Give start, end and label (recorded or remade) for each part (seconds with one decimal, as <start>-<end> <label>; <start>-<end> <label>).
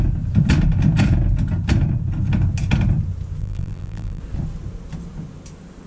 0.0-3.4 recorded; 3.4-4.2 remade; 4.2-5.9 recorded